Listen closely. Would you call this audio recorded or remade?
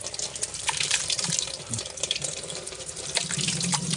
remade